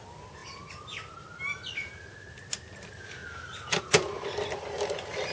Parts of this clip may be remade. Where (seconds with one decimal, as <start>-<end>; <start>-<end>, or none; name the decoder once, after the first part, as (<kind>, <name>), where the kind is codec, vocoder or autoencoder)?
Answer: none